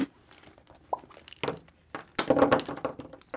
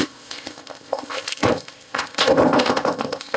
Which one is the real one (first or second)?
first